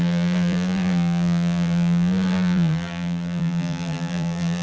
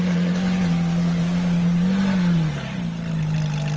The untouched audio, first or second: second